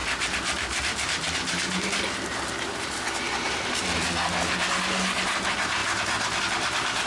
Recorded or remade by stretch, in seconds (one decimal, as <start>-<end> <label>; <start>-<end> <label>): 0.0-7.1 recorded